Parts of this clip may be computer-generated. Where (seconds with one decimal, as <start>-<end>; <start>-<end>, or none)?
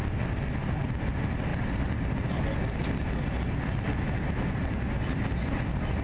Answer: none